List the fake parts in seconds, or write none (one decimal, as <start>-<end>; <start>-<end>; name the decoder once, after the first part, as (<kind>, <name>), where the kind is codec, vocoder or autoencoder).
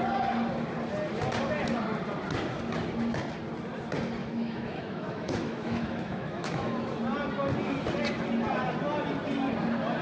4.2-7.0 (autoencoder, DAC-VAE)